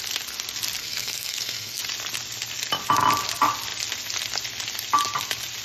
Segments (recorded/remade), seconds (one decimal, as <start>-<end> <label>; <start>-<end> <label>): 0.0-0.8 recorded; 0.8-1.8 remade; 1.8-5.6 recorded